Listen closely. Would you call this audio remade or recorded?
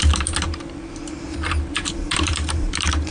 remade